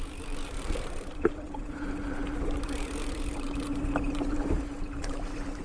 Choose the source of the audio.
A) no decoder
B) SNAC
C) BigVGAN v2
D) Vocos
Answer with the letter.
C